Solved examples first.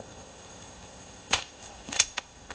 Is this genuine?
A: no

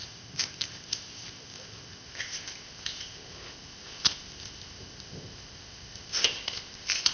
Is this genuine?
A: no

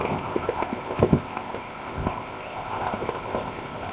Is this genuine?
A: no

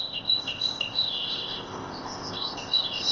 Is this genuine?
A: no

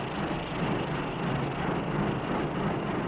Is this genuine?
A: yes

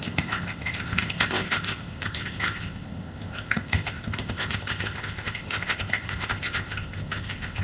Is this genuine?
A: no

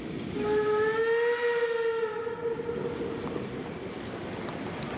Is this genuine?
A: yes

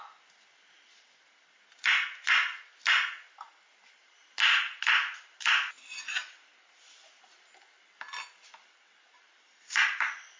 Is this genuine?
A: yes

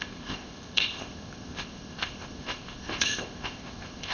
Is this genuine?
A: no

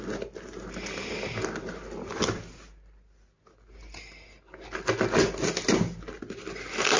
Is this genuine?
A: yes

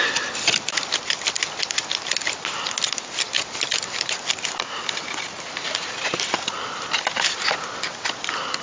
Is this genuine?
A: yes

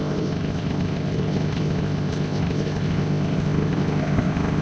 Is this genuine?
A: no